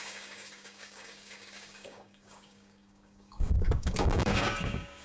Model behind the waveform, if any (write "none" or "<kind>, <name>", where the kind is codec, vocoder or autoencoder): codec, DAC